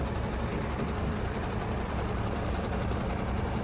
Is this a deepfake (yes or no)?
yes